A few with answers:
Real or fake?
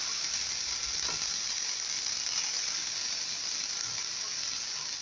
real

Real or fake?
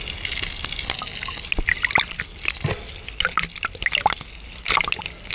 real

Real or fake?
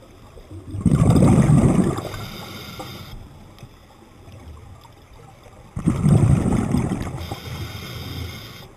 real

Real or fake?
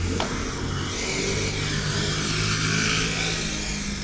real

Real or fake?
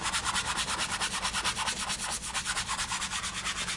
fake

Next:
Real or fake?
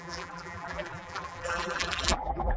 fake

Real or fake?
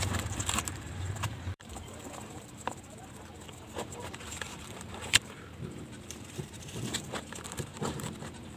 fake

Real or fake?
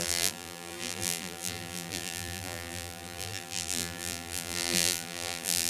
fake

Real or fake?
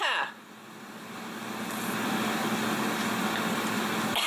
real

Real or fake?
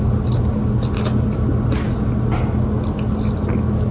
real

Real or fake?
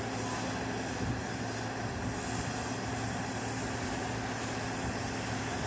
real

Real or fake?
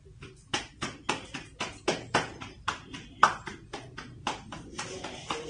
real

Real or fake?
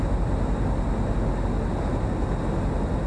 real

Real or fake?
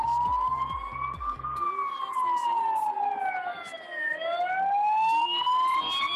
real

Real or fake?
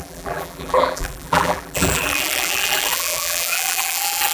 fake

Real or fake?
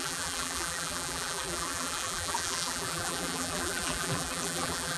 fake